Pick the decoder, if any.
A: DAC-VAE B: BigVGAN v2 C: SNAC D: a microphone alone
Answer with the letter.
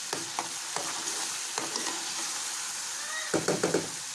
D